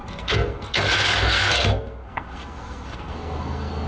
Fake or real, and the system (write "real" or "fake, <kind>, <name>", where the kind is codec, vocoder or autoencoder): fake, codec, SNAC